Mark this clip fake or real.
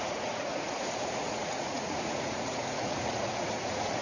fake